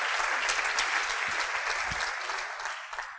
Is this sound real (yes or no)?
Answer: yes